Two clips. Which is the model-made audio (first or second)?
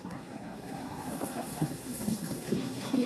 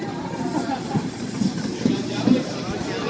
first